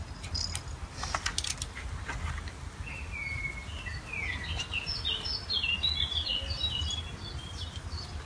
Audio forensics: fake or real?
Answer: real